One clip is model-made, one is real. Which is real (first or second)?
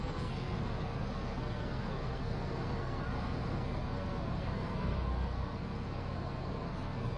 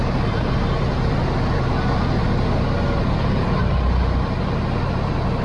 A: second